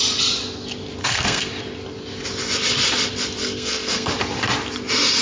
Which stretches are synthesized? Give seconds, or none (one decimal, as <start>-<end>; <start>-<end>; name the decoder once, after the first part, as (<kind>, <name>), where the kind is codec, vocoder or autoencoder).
1.0-1.5 (codec, SNAC); 3.4-4.1